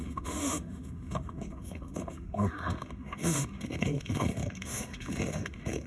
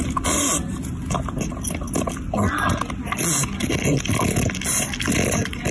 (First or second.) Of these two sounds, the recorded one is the second